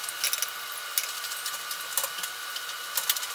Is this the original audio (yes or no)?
yes